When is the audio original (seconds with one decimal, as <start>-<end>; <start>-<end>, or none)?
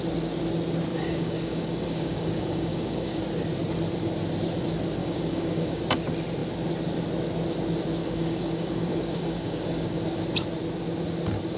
0.0-0.9; 3.2-5.0; 5.8-8.0; 10.0-11.6